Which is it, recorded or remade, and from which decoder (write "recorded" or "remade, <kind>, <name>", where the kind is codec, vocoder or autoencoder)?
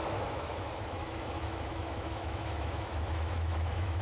remade, autoencoder, DAC-VAE